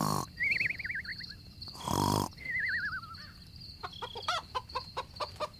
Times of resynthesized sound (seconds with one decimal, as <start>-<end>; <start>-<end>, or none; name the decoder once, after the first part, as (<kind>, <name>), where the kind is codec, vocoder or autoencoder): none